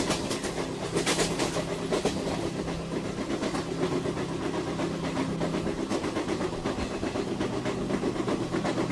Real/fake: real